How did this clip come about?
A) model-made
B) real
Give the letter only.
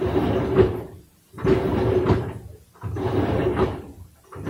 A